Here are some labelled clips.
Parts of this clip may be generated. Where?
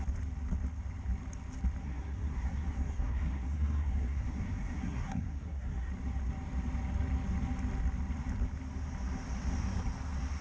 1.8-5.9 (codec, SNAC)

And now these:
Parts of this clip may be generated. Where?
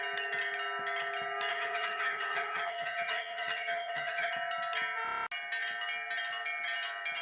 1.5-4.3 (vocoder, HiFi-GAN)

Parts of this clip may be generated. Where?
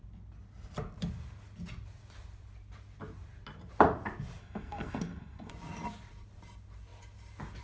4.4-5.5 (codec, SNAC)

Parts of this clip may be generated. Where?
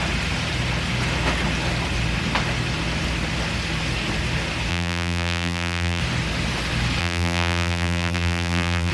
4.7-6.0 (vocoder, BigVGAN v2); 7.0-8.9